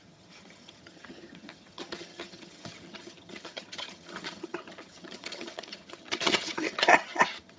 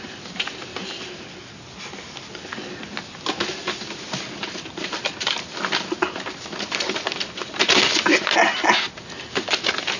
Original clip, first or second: second